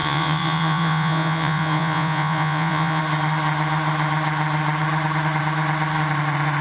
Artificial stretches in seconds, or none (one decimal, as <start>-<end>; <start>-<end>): 0.0-3.0